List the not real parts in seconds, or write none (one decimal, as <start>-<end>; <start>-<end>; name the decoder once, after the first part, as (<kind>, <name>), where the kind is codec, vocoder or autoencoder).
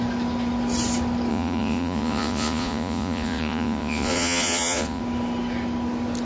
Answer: 1.3-5.0 (vocoder, Vocos)